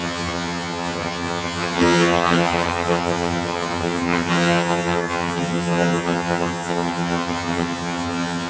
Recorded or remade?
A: remade